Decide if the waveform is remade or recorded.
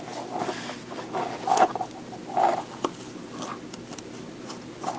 recorded